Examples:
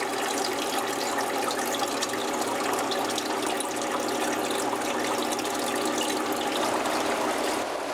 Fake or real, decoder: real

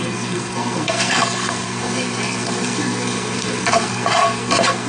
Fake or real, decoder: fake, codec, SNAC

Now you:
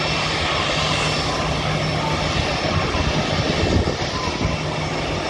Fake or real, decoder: real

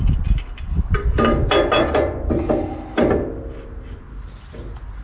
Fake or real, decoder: real